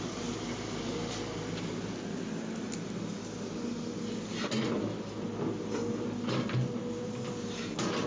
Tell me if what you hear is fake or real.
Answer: real